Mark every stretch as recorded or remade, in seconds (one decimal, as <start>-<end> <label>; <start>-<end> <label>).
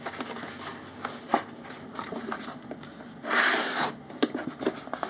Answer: 0.0-5.1 recorded